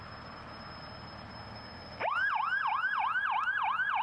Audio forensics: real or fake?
real